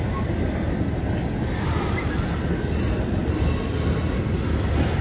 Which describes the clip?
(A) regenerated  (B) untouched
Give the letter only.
B